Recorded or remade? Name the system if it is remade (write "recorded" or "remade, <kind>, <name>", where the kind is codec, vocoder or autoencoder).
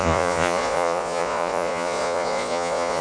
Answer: remade, vocoder, Vocos